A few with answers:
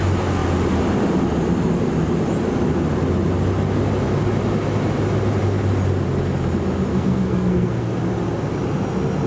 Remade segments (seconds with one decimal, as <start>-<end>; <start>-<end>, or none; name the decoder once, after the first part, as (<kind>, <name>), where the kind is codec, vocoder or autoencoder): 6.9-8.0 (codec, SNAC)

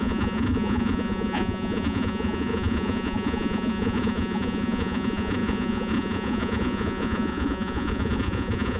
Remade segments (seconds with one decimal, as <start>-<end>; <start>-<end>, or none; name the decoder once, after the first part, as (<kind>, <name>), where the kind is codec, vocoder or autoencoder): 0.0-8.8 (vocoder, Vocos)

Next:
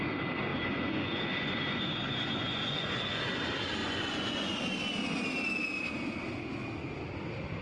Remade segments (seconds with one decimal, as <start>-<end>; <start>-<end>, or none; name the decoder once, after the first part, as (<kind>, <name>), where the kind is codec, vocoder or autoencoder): 0.5-3.2 (vocoder, Vocos); 3.8-4.6

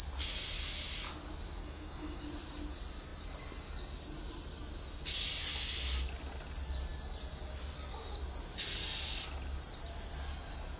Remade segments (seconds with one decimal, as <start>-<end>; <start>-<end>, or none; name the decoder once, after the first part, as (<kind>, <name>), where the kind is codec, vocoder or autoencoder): 1.6-2.2 (codec, DAC)

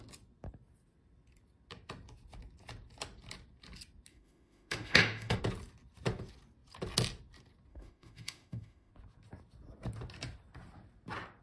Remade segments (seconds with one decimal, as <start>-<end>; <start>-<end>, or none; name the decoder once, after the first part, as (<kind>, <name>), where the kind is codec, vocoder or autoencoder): 4.1-5.4 (autoencoder, DAC-VAE); 7.7-8.9

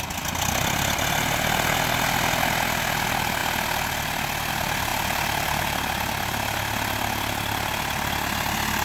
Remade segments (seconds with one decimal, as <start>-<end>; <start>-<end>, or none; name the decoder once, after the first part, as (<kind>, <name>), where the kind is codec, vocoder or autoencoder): 4.9-5.6 (vocoder, BigVGAN v2)

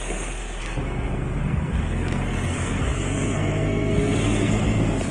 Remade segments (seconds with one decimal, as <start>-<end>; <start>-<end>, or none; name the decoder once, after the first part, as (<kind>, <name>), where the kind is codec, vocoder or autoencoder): 0.0-5.1 (codec, SNAC)

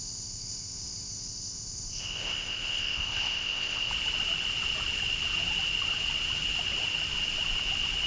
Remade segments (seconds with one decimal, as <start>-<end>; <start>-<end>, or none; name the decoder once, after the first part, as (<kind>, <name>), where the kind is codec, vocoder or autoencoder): 0.0-3.9 (codec, ZipCodec)